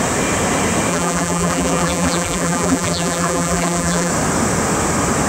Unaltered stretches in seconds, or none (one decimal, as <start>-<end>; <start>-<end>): 0.0-0.9; 4.1-5.3